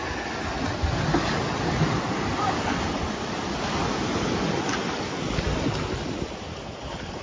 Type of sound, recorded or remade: recorded